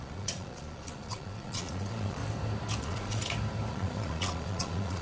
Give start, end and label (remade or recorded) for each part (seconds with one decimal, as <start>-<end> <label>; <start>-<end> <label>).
0.0-2.2 remade; 2.2-2.8 recorded; 2.8-3.2 remade; 3.2-3.7 recorded; 3.7-5.0 remade